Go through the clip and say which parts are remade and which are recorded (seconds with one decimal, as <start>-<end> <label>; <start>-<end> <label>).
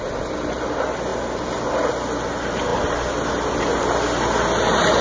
0.0-5.0 recorded